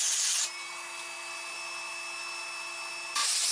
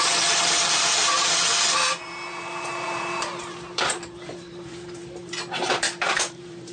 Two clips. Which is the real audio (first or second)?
first